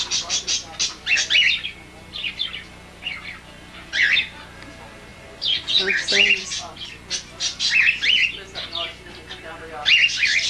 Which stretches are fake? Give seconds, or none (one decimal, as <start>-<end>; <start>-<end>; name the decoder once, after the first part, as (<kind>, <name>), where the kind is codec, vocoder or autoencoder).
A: 5.1-6.9 (vocoder, Vocos)